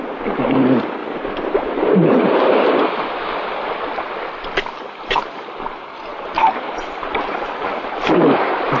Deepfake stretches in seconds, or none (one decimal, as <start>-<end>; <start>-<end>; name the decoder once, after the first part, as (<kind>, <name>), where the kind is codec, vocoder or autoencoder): 1.0-3.2 (vocoder, BigVGAN v2); 6.1-7.7